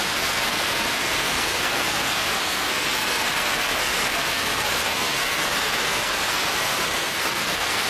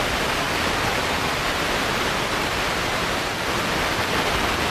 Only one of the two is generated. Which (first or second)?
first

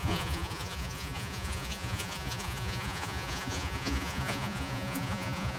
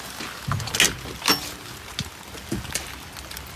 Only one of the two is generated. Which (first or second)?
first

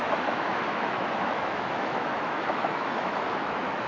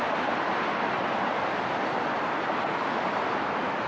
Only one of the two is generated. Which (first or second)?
first